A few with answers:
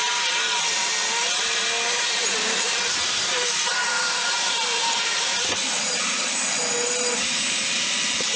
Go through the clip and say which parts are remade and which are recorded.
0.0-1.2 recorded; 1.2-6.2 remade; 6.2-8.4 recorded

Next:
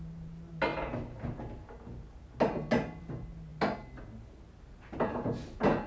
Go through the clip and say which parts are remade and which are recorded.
0.0-5.9 recorded

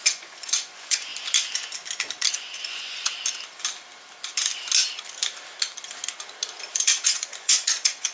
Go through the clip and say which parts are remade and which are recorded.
0.0-1.1 remade; 1.1-2.3 recorded; 2.3-3.1 remade; 3.1-6.7 recorded; 6.7-8.1 remade

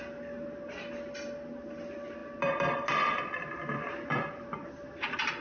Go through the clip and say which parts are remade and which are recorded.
0.0-5.4 recorded

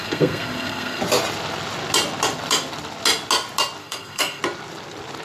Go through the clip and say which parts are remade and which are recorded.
0.0-1.0 remade; 1.0-3.8 recorded; 3.8-4.4 remade; 4.4-5.2 recorded